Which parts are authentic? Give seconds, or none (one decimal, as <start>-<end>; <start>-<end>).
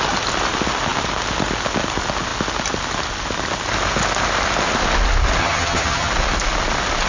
0.0-5.4; 6.1-7.1